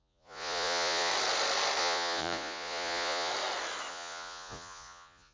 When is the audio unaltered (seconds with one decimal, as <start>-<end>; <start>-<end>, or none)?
1.1-1.8; 3.3-3.9